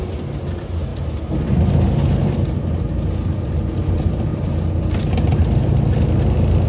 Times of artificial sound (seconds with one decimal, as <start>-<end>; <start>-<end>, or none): none